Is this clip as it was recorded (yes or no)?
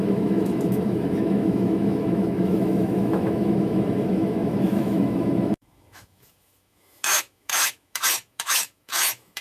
no